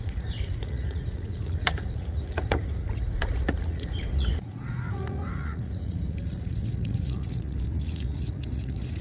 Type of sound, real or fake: fake